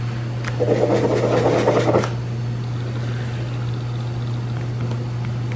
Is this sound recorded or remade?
recorded